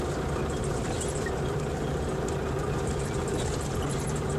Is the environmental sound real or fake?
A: real